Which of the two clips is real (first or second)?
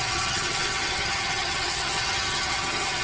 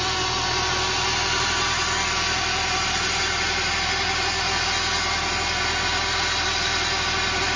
second